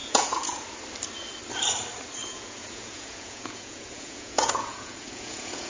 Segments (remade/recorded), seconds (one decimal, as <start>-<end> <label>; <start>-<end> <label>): 0.0-0.6 remade; 0.6-2.2 recorded; 2.2-5.7 remade